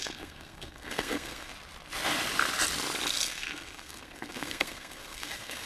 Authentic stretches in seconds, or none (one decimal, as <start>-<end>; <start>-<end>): 1.5-3.3